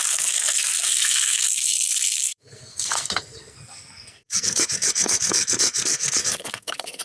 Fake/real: fake